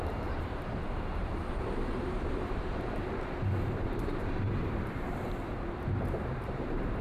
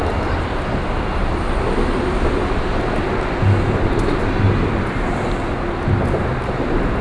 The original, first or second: second